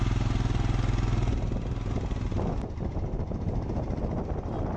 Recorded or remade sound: recorded